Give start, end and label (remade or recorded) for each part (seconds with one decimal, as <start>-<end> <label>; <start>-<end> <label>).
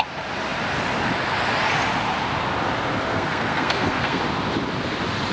0.0-3.1 recorded; 3.1-4.2 remade; 4.2-5.3 recorded